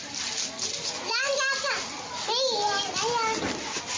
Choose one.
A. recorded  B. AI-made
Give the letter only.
A